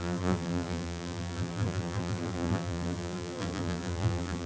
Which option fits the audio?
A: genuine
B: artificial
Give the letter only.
B